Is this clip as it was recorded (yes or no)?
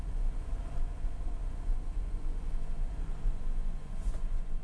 no